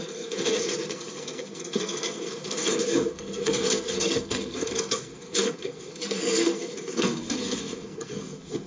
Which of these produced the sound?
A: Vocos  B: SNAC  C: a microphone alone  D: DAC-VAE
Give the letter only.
B